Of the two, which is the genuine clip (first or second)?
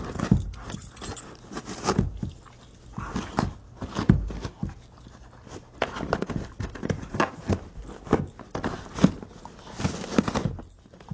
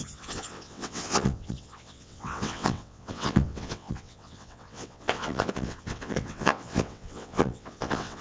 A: first